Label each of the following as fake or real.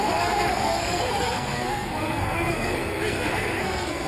fake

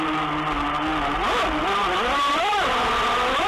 real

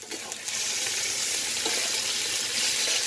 real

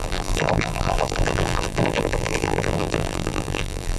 fake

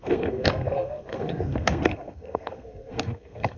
fake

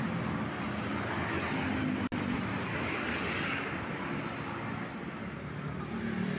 real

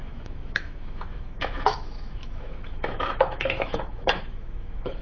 fake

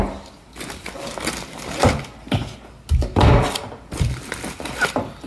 real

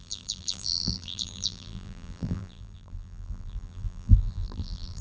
fake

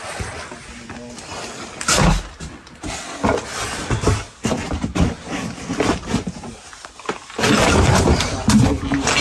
real